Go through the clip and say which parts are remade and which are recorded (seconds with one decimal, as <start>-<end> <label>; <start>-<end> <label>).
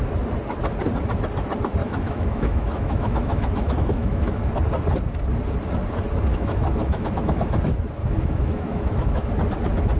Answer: 0.0-1.8 recorded; 1.8-4.5 remade; 4.5-6.3 recorded; 6.3-7.6 remade; 7.6-8.0 recorded; 8.0-9.3 remade; 9.3-10.0 recorded